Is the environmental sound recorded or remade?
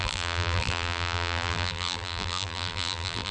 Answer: remade